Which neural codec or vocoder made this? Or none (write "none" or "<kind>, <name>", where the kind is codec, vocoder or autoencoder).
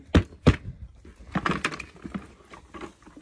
none